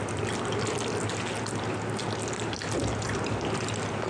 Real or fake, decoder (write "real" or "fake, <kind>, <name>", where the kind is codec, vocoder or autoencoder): real